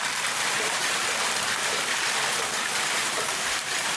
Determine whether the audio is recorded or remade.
remade